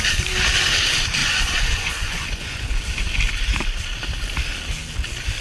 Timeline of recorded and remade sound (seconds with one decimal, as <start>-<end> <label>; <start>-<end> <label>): 0.0-1.2 recorded; 1.2-2.8 remade; 2.8-5.4 recorded